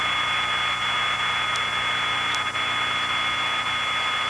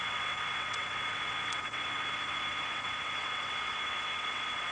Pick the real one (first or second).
first